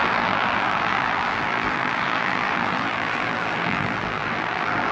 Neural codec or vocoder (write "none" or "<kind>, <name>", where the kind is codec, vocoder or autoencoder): vocoder, BigVGAN v2